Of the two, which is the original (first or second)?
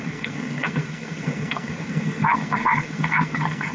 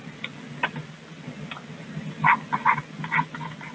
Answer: second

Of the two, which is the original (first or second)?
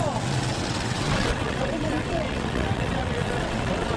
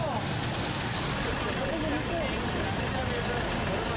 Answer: second